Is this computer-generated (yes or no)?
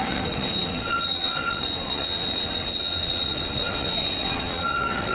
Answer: yes